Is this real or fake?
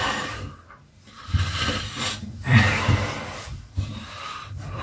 fake